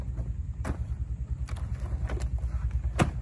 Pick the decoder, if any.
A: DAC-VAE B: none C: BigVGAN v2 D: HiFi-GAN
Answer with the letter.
B